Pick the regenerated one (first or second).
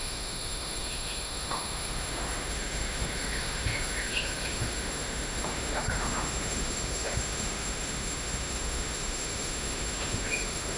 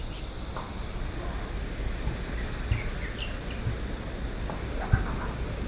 first